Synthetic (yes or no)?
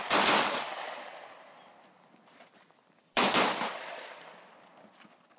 yes